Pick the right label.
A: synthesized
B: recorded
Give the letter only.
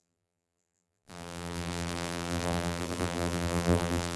A